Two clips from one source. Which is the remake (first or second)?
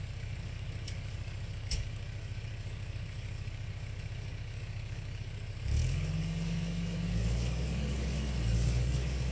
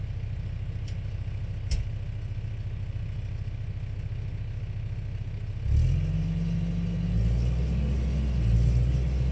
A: first